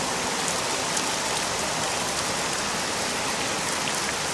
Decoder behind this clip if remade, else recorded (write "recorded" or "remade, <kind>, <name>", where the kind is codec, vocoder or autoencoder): recorded